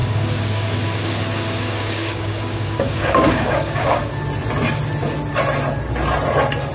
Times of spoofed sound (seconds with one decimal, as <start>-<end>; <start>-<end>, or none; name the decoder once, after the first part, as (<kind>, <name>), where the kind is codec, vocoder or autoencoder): 0.0-4.0 (codec, DAC)

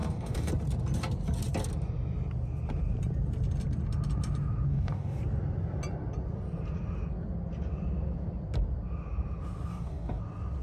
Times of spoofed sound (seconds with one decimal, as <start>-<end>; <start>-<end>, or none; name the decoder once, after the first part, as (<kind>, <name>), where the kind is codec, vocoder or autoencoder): 0.0-0.5 (codec, DAC); 4.7-5.2; 9.7-10.2

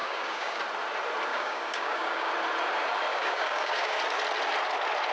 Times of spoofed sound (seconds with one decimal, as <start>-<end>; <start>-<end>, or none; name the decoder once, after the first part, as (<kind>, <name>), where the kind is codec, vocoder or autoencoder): 0.0-0.6 (codec, DAC); 1.3-2.3; 3.1-4.0